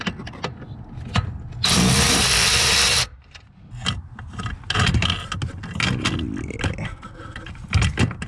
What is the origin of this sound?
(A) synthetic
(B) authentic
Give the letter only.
B